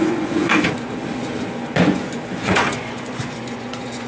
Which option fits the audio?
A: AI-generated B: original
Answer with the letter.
A